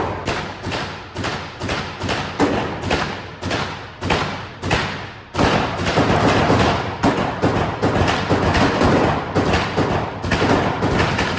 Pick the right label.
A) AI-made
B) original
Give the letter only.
B